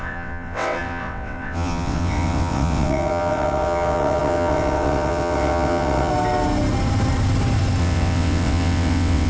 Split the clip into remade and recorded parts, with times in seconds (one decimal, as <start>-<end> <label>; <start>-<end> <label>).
0.0-6.1 remade; 6.1-7.8 recorded; 7.8-9.3 remade